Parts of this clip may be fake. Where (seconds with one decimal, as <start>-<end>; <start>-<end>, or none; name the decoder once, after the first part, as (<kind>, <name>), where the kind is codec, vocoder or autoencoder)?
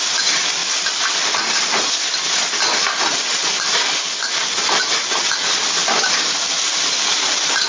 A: 0.6-5.2 (vocoder, BigVGAN v2); 5.8-7.1